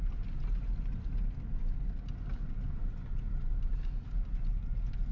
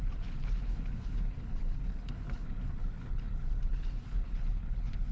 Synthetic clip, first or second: second